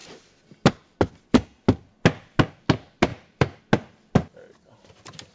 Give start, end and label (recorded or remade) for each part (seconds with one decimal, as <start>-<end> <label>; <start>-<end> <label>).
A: 0.0-3.1 recorded; 3.1-3.6 remade; 3.6-5.3 recorded

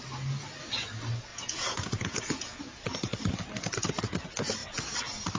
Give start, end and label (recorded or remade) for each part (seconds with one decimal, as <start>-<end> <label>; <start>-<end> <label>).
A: 0.0-1.3 recorded; 1.3-2.6 remade; 2.6-5.4 recorded